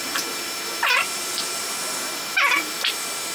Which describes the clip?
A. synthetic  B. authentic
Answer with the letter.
A